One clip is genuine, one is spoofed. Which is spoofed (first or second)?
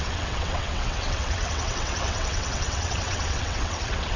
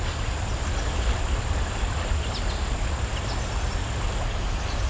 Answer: first